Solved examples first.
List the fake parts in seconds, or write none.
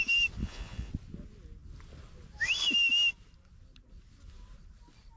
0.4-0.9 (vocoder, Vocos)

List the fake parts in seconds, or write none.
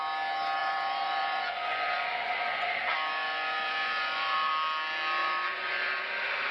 0.6-4.5 (vocoder, Vocos); 5.2-6.0